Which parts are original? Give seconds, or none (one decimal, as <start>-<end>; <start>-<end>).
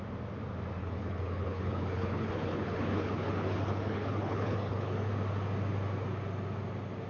0.0-0.8; 5.1-7.1